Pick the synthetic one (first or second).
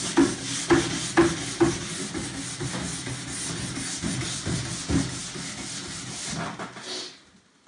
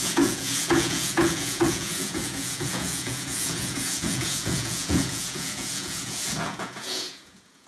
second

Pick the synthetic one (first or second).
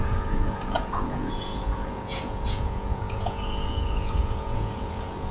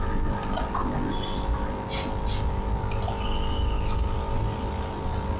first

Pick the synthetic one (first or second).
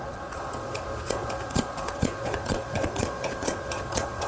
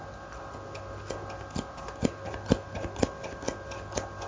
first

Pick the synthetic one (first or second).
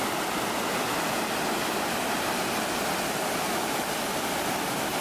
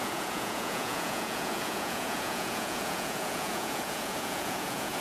second